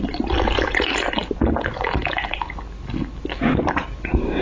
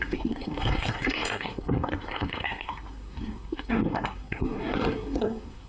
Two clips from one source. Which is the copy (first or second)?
second